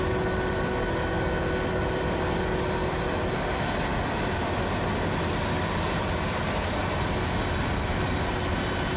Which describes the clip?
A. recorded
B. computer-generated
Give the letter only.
A